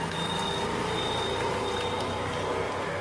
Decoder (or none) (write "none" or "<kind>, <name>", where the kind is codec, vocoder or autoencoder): none